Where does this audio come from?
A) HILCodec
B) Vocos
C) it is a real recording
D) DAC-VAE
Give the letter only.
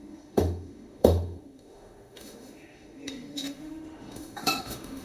D